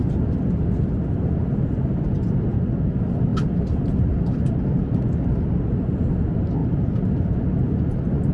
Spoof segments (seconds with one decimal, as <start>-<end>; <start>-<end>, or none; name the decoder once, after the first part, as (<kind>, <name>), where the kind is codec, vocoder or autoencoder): 3.3-5.0 (vocoder, BigVGAN v2); 6.6-7.3